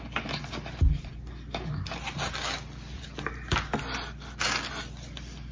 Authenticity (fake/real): real